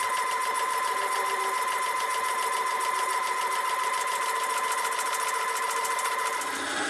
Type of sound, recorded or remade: recorded